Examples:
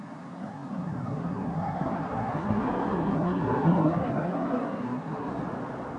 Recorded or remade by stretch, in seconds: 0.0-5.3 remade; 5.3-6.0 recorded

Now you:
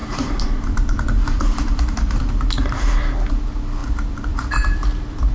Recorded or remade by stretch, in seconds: 0.0-2.2 remade; 2.2-3.8 recorded; 3.8-5.3 remade

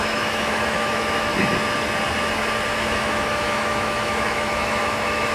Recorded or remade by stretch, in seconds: 0.0-1.3 remade; 1.3-2.7 recorded; 2.7-5.3 remade

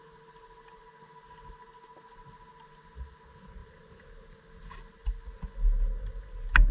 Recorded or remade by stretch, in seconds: 0.0-6.7 recorded

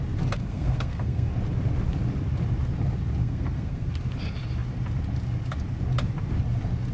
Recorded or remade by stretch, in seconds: 0.0-0.4 recorded; 0.4-1.3 remade; 1.3-3.2 recorded; 3.2-3.9 remade; 3.9-6.9 recorded

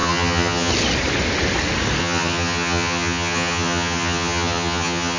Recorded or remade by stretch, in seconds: 0.0-0.7 remade; 0.7-2.0 recorded; 2.0-5.2 remade

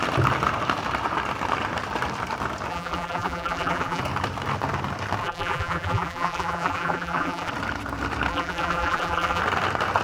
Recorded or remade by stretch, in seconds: 0.0-2.7 recorded; 2.7-4.0 remade; 4.0-5.2 recorded; 5.2-7.5 remade; 7.5-8.3 recorded; 8.3-9.4 remade; 9.4-10.0 recorded

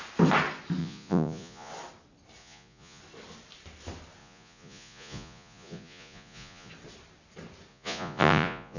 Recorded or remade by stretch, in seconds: 0.0-0.8 recorded; 0.8-1.7 remade; 1.7-2.4 recorded; 2.4-3.0 remade; 3.0-4.2 recorded; 4.2-6.7 remade; 6.7-7.7 recorded; 7.7-8.8 remade